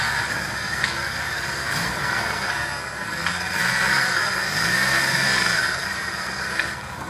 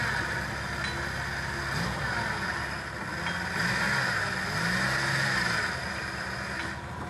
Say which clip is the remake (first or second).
first